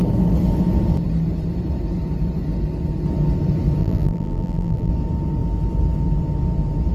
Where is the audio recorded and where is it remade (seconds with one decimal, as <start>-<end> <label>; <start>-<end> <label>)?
0.0-3.8 recorded; 3.8-4.9 remade; 4.9-6.9 recorded